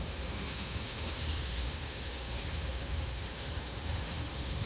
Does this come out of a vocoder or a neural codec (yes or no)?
yes